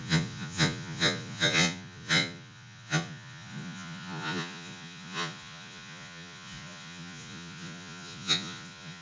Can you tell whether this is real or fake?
fake